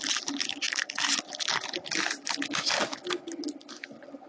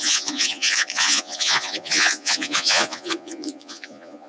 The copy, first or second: second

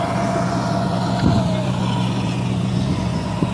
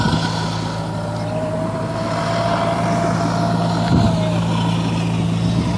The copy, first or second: first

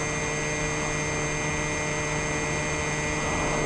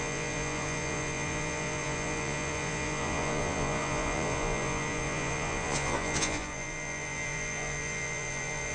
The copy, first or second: second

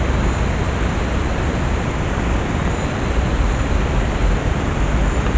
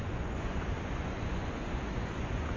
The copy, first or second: second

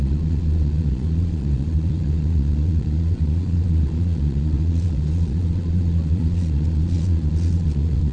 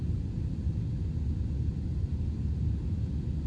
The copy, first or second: first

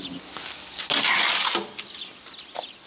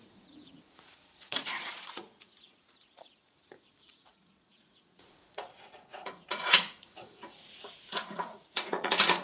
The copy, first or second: second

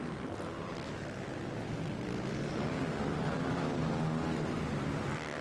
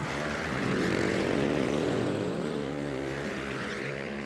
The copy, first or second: second